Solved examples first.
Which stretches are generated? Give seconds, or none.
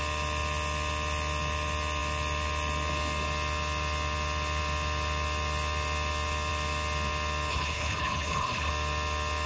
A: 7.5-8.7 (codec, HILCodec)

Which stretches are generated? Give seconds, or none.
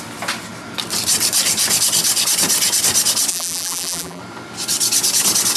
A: 3.3-4.2 (vocoder, BigVGAN v2)